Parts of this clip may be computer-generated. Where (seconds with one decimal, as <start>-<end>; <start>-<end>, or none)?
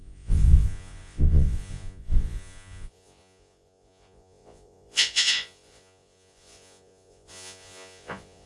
0.0-8.5